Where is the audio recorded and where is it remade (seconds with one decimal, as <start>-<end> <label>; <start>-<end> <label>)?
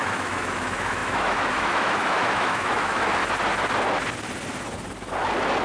0.0-3.2 remade; 3.2-5.6 recorded